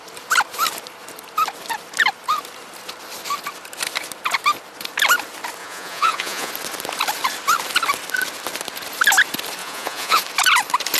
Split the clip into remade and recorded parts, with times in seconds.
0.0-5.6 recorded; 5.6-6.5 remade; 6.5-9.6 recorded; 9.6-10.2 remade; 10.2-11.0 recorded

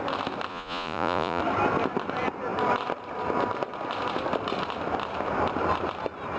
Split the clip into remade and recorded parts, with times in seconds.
0.0-0.5 recorded; 0.5-1.4 remade; 1.4-6.4 recorded

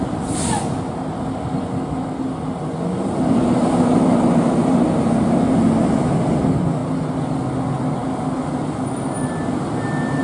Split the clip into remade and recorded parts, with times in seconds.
0.0-10.2 recorded

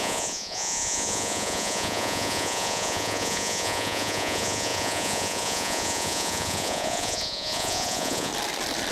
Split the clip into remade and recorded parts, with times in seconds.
0.0-8.3 remade; 8.3-8.9 recorded

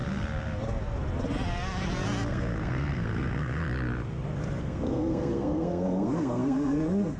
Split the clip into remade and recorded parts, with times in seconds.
0.0-2.3 recorded; 2.3-3.6 remade; 3.6-4.6 recorded; 4.6-7.2 remade